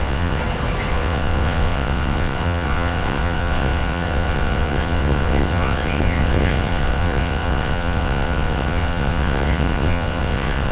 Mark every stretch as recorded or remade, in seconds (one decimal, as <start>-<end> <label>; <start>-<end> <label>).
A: 0.0-0.4 remade; 0.4-0.9 recorded; 0.9-10.7 remade